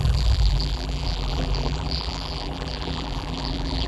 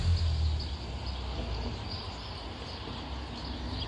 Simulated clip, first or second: first